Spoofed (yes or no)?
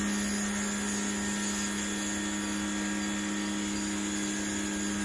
no